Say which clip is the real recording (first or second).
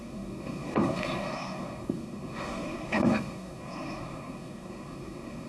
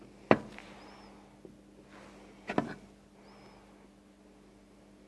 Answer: second